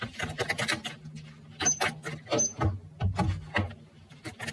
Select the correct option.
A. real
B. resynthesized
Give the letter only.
A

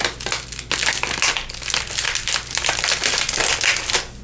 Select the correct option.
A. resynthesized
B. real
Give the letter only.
B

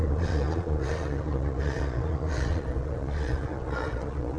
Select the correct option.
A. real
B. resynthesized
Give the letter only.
B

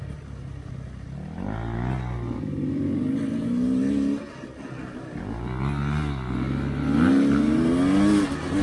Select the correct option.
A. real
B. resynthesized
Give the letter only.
A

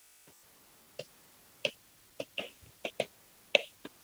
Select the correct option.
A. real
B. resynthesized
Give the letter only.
A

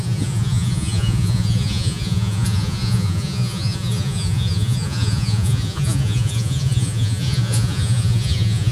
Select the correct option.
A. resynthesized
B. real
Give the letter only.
A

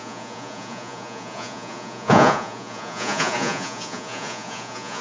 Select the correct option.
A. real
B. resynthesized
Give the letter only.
B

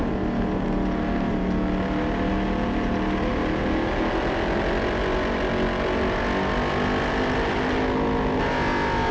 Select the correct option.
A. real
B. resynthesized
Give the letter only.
A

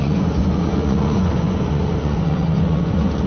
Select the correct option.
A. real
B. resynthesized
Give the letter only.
B